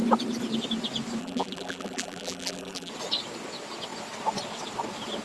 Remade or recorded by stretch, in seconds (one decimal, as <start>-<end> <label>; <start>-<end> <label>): 0.0-1.2 recorded; 1.2-2.9 remade; 2.9-5.2 recorded